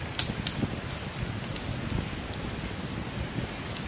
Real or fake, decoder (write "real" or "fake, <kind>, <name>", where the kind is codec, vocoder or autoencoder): real